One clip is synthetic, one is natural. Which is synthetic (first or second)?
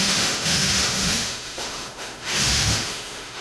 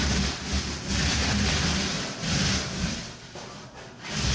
first